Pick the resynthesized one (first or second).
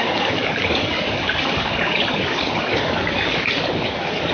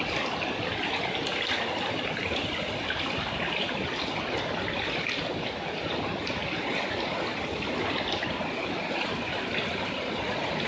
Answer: first